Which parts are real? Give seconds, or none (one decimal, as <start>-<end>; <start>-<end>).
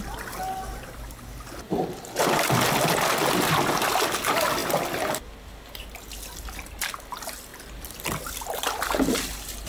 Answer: 0.0-7.5